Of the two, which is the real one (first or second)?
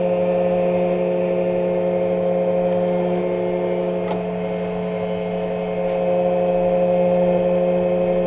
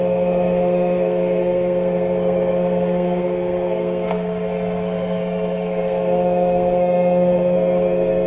first